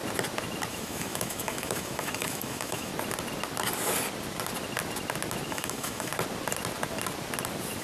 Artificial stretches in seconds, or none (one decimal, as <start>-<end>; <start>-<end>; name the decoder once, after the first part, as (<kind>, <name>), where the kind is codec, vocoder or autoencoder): 0.7-2.9 (autoencoder, DAC-VAE); 5.5-6.1